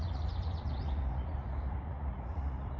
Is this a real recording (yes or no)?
no